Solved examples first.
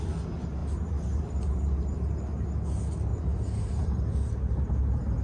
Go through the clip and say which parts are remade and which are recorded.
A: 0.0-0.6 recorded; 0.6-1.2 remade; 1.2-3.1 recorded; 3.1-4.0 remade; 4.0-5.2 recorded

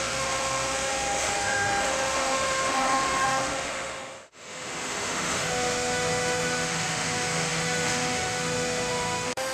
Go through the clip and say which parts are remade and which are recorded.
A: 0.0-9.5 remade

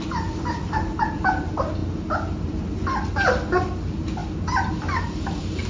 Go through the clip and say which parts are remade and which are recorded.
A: 0.0-5.7 recorded

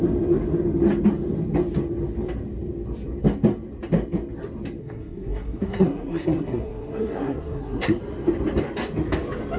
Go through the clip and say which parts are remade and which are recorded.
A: 0.0-4.8 recorded; 4.8-8.0 remade; 8.0-9.6 recorded

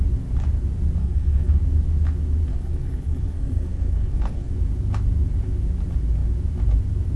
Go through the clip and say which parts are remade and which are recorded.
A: 0.0-1.0 recorded; 1.0-1.6 remade; 1.6-2.5 recorded; 2.5-4.5 remade; 4.5-7.2 recorded

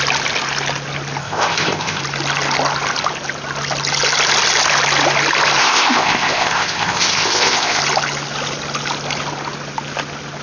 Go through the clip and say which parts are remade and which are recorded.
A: 0.0-1.2 recorded; 1.2-2.0 remade; 2.0-5.6 recorded; 5.6-7.8 remade; 7.8-10.4 recorded